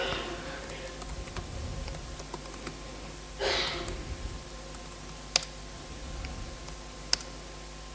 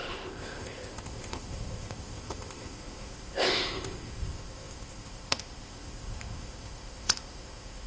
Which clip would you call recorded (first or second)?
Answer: first